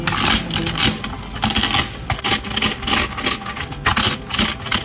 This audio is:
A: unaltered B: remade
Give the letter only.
A